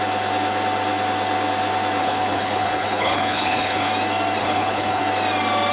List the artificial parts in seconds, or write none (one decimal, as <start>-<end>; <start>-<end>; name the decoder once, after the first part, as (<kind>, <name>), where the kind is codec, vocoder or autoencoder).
2.0-3.9 (codec, HILCodec); 4.4-5.0